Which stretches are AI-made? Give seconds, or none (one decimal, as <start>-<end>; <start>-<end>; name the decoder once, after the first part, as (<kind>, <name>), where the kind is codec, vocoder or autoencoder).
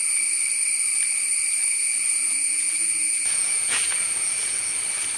1.6-4.7 (vocoder, Vocos)